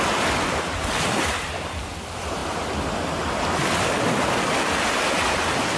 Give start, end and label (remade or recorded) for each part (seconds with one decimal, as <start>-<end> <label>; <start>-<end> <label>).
0.0-5.8 recorded